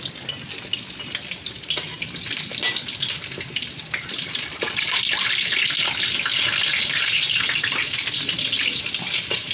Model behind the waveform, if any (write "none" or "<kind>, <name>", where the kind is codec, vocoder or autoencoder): none